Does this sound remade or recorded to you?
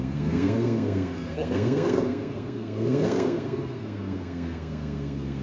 remade